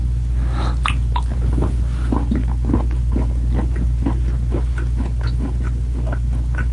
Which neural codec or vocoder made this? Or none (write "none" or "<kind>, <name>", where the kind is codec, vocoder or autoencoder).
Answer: none